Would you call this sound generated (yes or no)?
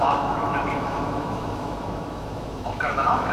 yes